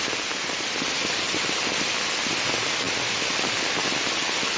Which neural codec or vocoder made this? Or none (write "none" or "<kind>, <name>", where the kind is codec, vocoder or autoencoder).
none